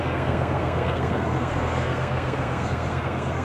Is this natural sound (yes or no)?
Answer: no